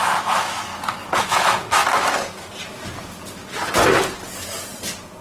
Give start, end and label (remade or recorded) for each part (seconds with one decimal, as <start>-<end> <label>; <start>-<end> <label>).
0.0-0.7 remade; 0.7-1.2 recorded; 1.2-1.8 remade; 1.8-5.2 recorded